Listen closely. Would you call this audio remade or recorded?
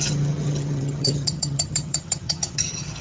remade